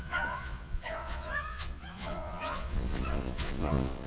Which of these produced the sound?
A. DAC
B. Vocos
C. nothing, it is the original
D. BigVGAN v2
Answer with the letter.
B